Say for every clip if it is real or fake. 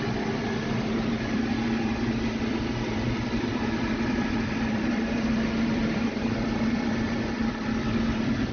fake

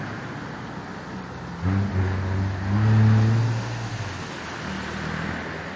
real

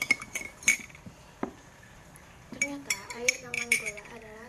fake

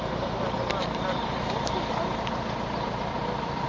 real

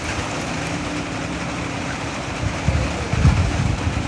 fake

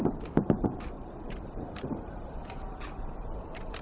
fake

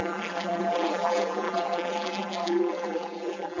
fake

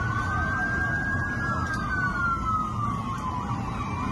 real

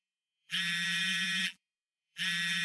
fake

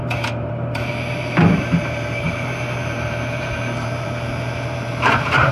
fake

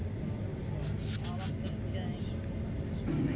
real